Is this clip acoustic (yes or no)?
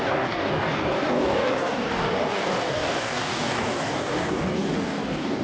no